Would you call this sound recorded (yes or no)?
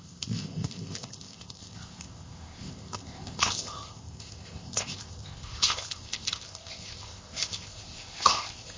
no